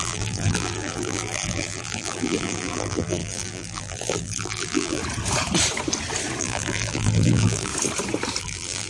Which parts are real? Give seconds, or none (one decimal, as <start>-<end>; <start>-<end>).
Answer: 5.0-6.4; 7.7-8.4